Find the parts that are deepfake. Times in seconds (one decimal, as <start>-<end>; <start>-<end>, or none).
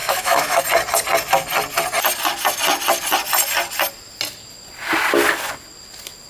0.0-0.6